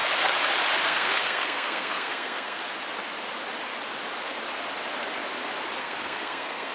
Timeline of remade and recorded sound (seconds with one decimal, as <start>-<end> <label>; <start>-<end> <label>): 0.0-0.8 recorded; 0.8-2.6 remade; 2.6-5.8 recorded; 5.8-6.7 remade